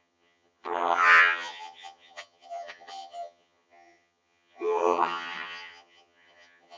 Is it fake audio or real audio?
fake